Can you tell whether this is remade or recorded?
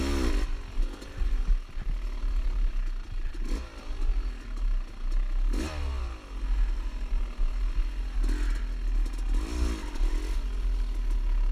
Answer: recorded